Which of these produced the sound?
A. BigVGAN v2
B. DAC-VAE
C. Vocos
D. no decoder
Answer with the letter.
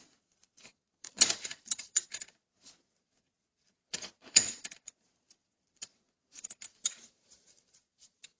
C